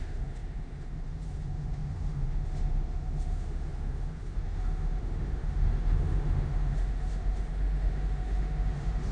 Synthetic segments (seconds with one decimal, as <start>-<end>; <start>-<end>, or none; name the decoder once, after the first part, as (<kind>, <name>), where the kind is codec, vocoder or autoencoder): 0.0-9.1 (autoencoder, DAC-VAE)